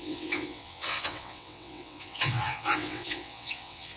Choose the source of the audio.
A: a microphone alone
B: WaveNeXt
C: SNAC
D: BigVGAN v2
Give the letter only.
B